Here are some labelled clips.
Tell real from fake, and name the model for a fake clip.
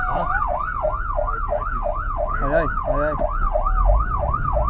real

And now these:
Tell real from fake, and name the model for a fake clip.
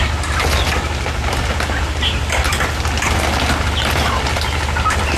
real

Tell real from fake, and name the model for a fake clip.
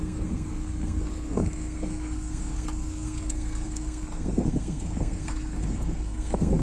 fake, codec, SNAC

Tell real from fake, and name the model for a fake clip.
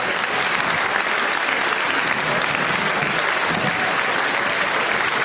real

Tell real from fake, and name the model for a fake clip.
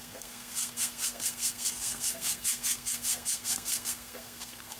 fake, codec, SNAC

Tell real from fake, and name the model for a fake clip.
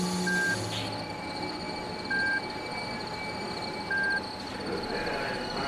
real